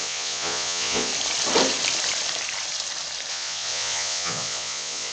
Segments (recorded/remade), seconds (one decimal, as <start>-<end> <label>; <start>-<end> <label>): 0.0-1.1 remade; 1.1-3.3 recorded; 3.3-5.1 remade